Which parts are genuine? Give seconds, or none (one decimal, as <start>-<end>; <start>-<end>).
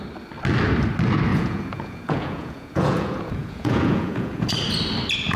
0.0-1.3; 4.5-5.4